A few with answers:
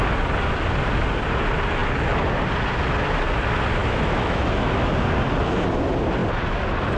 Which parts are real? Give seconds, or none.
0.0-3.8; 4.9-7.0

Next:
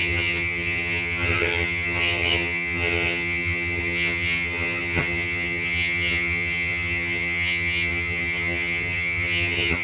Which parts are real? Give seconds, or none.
none

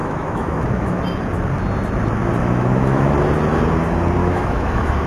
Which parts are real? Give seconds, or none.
1.0-2.4; 3.1-4.2

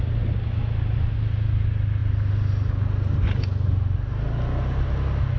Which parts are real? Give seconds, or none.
0.0-5.4

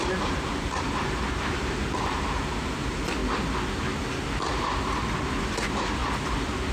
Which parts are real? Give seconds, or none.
3.2-5.4; 6.0-6.7